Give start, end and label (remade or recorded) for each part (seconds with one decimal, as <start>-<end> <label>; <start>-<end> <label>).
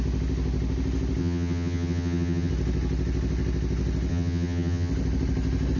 0.0-1.2 recorded; 1.2-2.5 remade; 2.5-4.1 recorded; 4.1-4.9 remade; 4.9-5.8 recorded